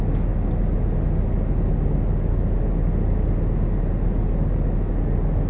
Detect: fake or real real